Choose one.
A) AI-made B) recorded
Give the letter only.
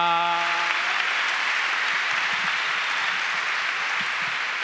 B